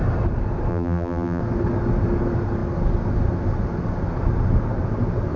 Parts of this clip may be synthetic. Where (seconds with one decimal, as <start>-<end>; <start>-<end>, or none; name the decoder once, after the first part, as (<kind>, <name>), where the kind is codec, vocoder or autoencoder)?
0.7-1.4 (vocoder, BigVGAN v2)